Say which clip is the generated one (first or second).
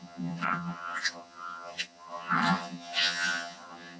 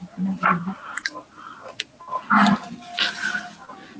first